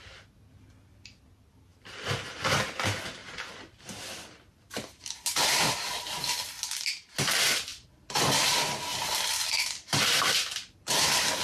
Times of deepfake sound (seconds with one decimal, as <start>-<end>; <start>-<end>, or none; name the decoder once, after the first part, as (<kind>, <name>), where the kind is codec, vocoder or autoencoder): 3.2-6.5 (vocoder, BigVGAN v2); 7.7-10.3